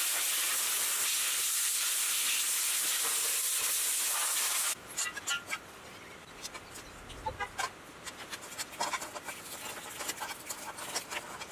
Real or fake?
real